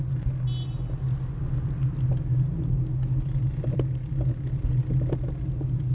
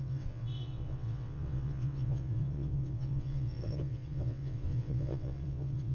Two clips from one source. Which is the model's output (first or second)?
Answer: second